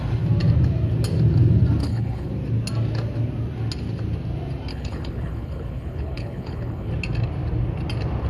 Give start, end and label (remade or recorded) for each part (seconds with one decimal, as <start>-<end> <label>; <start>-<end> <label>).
0.0-1.8 recorded; 1.8-2.3 remade; 2.3-4.7 recorded; 4.7-6.9 remade; 6.9-8.3 recorded